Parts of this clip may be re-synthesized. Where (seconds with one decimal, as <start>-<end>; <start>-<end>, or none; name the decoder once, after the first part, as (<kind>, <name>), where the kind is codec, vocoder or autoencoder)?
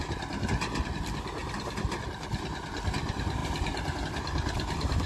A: 1.4-2.5 (vocoder, BigVGAN v2)